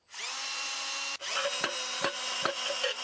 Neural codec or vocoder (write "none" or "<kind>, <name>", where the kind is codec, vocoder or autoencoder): none